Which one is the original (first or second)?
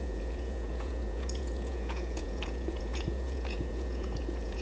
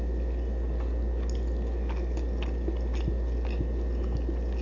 second